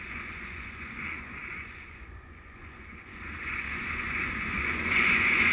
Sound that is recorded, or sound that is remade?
remade